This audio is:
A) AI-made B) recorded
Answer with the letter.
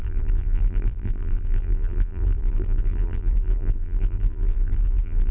A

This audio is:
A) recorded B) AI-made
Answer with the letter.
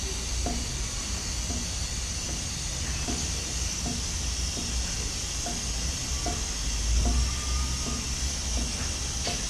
A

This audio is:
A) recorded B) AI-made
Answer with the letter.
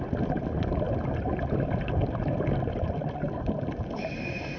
A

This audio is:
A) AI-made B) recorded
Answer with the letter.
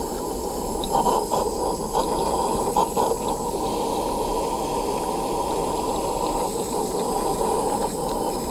B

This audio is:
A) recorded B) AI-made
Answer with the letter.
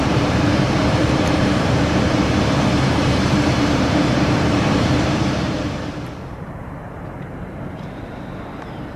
B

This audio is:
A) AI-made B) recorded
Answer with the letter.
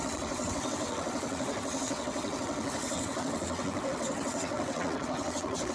A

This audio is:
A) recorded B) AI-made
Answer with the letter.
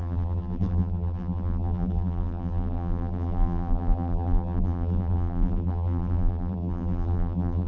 B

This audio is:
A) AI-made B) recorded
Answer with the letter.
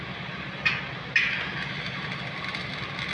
B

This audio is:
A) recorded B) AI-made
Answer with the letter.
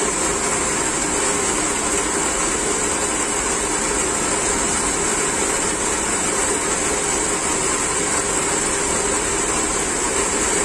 A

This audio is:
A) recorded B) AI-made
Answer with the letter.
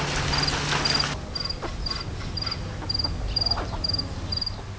A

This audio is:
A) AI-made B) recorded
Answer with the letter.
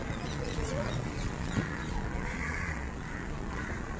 A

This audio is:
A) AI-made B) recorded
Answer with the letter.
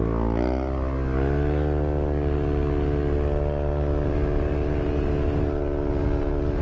B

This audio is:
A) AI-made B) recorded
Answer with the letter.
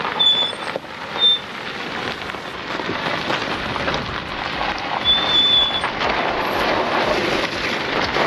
A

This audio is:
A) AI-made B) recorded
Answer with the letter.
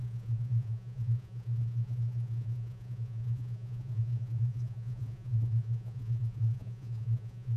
A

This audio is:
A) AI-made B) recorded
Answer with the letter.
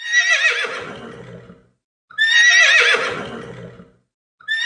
B